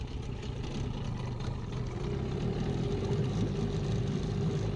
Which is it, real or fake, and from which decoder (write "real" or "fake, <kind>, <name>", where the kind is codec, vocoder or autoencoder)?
real